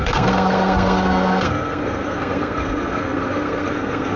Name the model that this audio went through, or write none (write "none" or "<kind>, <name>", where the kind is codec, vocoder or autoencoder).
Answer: codec, SNAC